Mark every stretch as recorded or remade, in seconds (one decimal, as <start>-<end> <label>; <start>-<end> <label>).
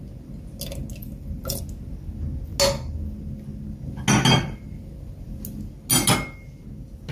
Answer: 0.0-1.0 recorded; 1.0-1.6 remade; 1.6-7.1 recorded